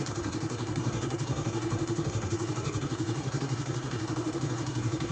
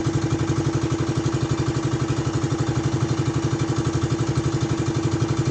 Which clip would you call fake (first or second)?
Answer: first